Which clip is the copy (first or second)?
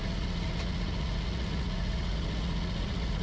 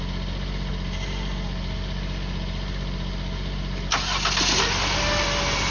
first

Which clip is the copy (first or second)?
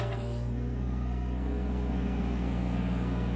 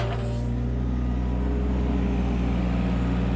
first